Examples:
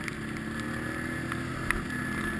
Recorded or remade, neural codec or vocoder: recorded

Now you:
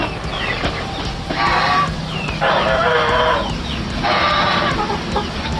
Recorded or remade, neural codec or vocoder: recorded